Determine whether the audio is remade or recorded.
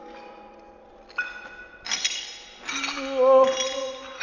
recorded